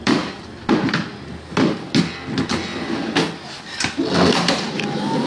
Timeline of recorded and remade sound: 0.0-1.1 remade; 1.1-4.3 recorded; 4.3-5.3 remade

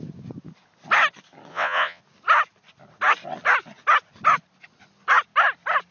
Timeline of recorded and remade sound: 0.0-1.5 recorded; 1.5-2.0 remade; 2.0-5.9 recorded

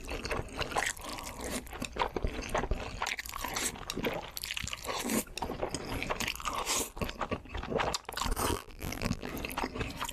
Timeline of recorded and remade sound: 0.0-8.5 recorded; 8.5-9.3 remade; 9.3-10.1 recorded

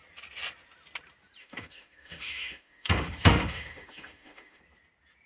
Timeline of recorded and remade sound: 0.0-1.4 recorded; 1.4-4.6 remade; 4.6-5.3 recorded

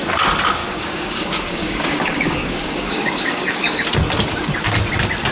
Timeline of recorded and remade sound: 0.0-0.6 recorded; 0.6-3.8 remade; 3.8-5.3 recorded

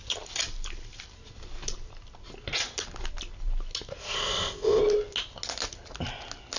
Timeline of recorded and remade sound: 0.0-4.0 recorded; 4.0-4.8 remade; 4.8-6.6 recorded

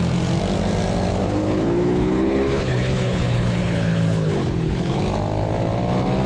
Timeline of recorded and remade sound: 0.0-1.2 recorded; 1.2-5.0 remade; 5.0-6.3 recorded

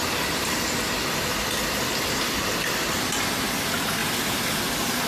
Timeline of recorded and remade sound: 0.0-5.1 recorded